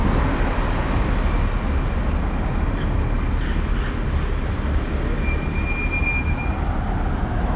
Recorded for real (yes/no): yes